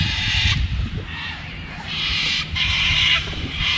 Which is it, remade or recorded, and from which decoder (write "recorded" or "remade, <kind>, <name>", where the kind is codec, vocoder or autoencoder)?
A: remade, vocoder, BigVGAN v2